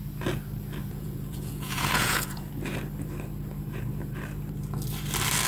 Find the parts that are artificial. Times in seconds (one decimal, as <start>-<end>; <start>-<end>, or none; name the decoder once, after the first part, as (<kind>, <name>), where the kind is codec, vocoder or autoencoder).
0.8-2.5 (vocoder, Vocos)